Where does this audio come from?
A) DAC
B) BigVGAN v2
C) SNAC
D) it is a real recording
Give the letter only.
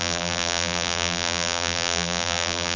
B